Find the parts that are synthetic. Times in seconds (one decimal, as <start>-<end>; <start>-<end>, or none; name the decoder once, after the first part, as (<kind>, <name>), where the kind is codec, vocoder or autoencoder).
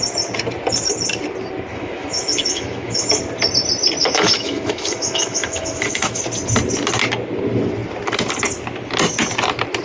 1.7-3.2 (autoencoder, DAC-VAE); 4.0-6.2